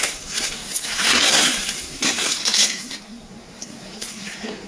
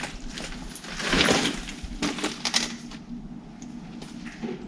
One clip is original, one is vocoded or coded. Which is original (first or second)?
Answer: second